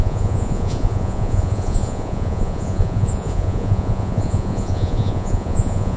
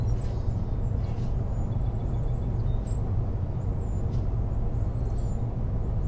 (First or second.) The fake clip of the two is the first